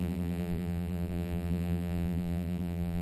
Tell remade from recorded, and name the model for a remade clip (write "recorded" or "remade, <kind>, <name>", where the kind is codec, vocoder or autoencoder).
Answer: remade, vocoder, BigVGAN v2